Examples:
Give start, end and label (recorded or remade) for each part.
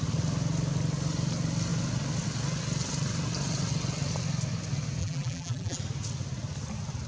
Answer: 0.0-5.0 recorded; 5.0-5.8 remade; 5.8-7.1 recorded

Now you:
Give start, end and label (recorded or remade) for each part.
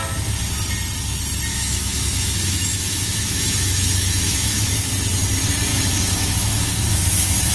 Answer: 0.0-1.5 recorded; 1.5-4.9 remade; 4.9-5.7 recorded; 5.7-7.5 remade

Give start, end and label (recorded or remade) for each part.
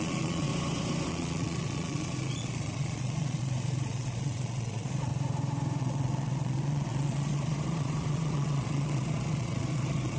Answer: 0.0-0.5 remade; 0.5-1.1 recorded; 1.1-5.1 remade; 5.1-5.8 recorded; 5.8-10.2 remade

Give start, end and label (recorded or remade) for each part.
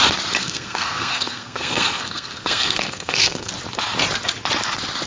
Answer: 0.0-0.4 recorded; 0.4-3.5 remade; 3.5-5.1 recorded